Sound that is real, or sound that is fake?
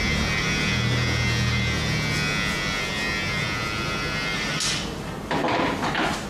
real